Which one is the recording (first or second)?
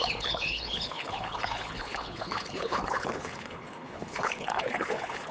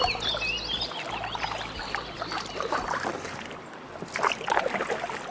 second